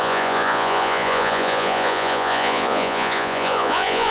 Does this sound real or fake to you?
fake